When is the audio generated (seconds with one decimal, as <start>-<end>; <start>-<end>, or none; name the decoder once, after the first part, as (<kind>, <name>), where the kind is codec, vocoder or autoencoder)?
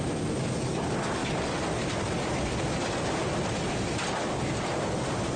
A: none